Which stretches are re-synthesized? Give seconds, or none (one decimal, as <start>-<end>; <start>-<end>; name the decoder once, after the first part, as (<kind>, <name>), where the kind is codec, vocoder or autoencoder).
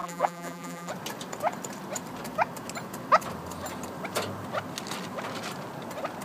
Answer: 0.0-0.9 (vocoder, BigVGAN v2)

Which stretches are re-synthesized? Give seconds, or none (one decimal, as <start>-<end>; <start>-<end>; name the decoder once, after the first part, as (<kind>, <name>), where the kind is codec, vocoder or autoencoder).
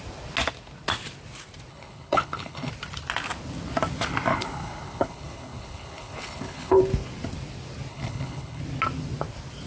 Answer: 1.7-2.7 (codec, HILCodec); 4.3-6.8; 7.9-8.6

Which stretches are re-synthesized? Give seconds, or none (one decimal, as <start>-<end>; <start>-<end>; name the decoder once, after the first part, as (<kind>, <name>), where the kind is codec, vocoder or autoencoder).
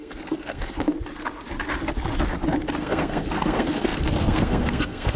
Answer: 0.0-0.9 (codec, SNAC); 2.8-5.2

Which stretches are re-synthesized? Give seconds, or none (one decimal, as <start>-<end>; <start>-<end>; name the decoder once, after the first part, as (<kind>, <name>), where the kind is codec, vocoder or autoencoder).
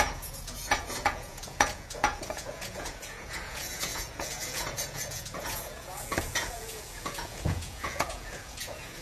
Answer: 0.0-9.0 (vocoder, Vocos)